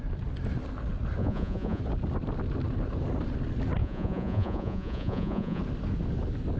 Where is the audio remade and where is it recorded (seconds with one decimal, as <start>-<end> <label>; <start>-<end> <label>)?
0.0-1.2 recorded; 1.2-1.8 remade; 1.8-3.8 recorded; 3.8-5.6 remade; 5.6-6.6 recorded